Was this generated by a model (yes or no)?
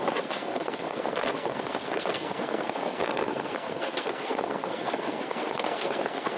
yes